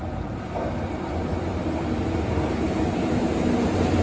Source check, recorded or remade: recorded